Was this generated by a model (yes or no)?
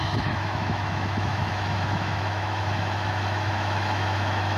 yes